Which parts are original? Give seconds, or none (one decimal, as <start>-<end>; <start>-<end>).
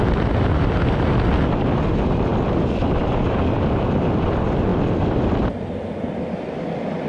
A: none